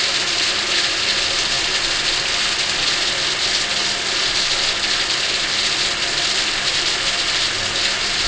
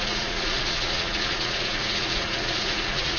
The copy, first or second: second